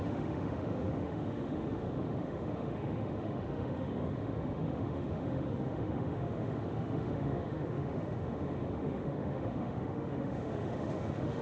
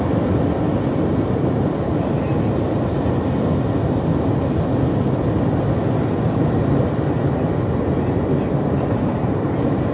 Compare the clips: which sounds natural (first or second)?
second